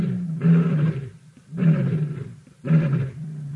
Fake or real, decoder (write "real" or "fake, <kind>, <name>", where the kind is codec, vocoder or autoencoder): fake, vocoder, BigVGAN v2